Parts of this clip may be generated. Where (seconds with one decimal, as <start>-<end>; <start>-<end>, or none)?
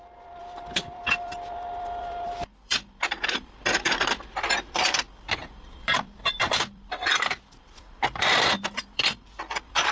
0.0-9.9